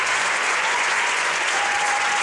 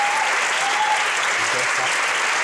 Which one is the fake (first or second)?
first